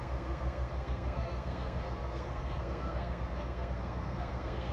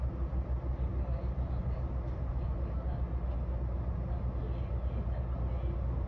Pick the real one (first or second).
second